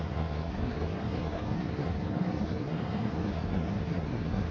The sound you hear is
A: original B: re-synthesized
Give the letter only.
B